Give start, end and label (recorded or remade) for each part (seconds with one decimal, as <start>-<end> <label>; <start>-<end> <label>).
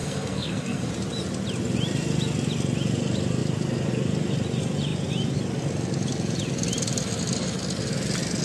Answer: 0.0-0.9 remade; 0.9-8.4 recorded